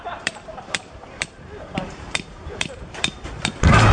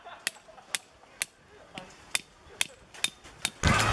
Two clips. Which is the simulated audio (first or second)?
first